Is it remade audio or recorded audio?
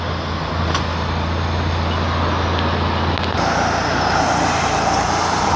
recorded